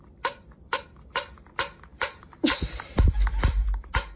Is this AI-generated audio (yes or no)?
yes